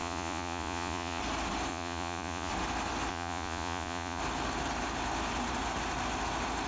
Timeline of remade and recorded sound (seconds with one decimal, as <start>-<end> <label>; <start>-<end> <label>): 0.0-1.2 remade; 1.2-1.7 recorded; 1.7-2.5 remade; 2.5-3.1 recorded; 3.1-4.2 remade; 4.2-6.7 recorded